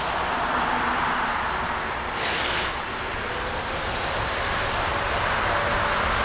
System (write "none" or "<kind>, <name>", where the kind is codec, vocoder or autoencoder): none